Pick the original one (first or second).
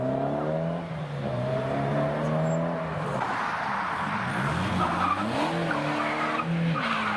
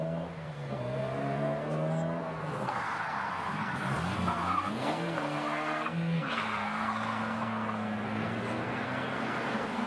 first